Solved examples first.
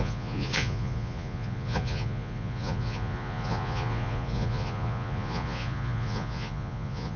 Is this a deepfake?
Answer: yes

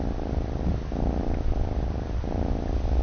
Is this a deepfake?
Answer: yes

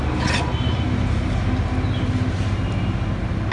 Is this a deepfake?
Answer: no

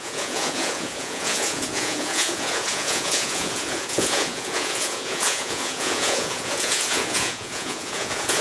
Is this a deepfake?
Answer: yes